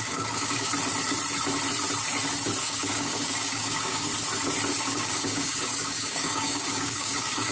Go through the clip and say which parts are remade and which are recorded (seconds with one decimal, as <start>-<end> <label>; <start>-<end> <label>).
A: 0.0-0.7 remade; 0.7-2.6 recorded; 2.6-4.1 remade; 4.1-4.8 recorded; 4.8-7.5 remade